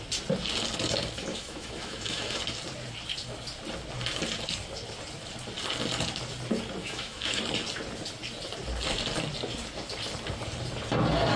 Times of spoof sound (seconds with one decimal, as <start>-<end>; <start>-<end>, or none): 1.3-2.4; 6.8-7.4